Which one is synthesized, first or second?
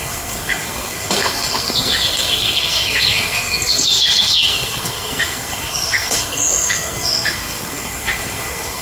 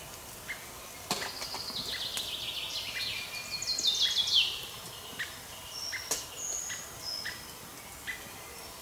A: first